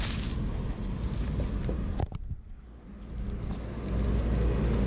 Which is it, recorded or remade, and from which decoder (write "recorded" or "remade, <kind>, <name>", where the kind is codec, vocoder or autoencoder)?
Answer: recorded